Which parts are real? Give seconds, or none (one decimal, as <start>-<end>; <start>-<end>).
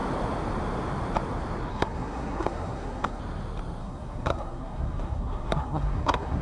0.0-1.7; 3.2-3.8